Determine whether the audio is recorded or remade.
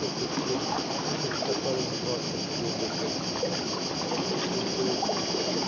recorded